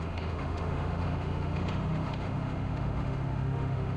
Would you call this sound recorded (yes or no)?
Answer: no